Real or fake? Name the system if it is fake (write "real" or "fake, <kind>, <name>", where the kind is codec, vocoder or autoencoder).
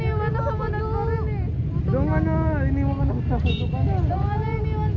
real